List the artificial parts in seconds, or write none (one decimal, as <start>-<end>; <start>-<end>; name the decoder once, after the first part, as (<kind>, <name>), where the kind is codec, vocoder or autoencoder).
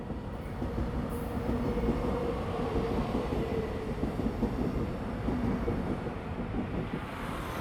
none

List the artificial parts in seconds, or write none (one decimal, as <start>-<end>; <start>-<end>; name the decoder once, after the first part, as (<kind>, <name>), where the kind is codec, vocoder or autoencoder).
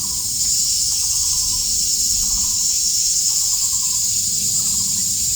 0.7-3.9 (autoencoder, DAC-VAE)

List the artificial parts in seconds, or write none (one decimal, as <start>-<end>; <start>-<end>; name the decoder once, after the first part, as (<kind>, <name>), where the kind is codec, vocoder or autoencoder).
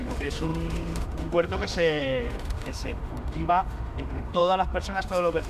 0.0-5.5 (autoencoder, DAC-VAE)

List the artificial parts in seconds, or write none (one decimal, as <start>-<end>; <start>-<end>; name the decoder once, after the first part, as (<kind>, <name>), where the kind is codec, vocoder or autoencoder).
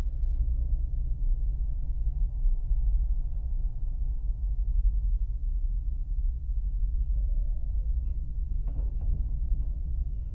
1.8-2.8 (autoencoder, DAC-VAE); 4.4-5.1; 8.6-9.1